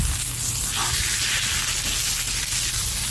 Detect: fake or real real